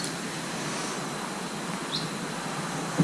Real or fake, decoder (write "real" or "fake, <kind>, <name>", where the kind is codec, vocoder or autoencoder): real